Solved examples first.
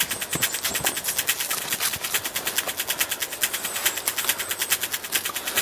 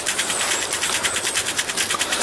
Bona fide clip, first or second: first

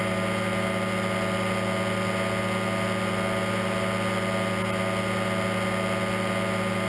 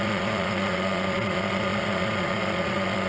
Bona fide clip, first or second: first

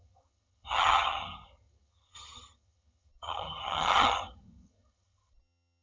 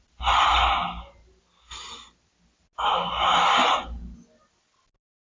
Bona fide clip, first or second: second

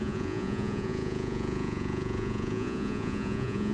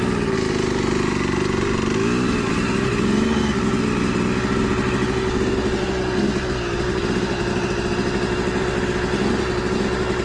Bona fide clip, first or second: second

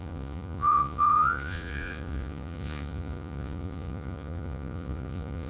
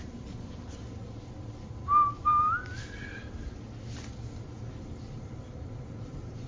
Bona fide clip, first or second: second